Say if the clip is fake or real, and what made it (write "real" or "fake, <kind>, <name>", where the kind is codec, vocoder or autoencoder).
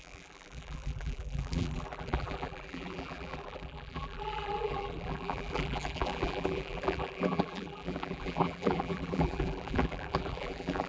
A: fake, vocoder, BigVGAN v2